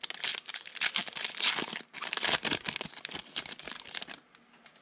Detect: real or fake real